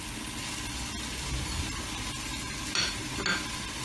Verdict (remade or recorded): recorded